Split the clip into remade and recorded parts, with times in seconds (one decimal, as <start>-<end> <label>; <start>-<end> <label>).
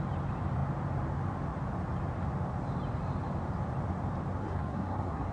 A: 0.0-4.4 recorded; 4.4-5.3 remade